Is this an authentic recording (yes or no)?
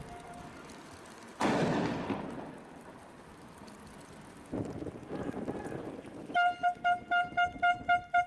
yes